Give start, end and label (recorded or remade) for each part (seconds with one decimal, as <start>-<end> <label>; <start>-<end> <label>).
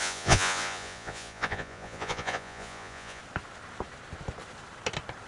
0.0-3.2 remade; 3.2-5.3 recorded